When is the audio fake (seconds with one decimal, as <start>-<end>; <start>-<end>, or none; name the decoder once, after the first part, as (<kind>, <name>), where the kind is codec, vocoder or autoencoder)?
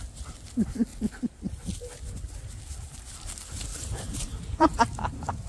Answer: 3.7-4.8 (vocoder, BigVGAN v2)